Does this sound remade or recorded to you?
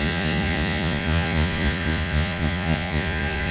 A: remade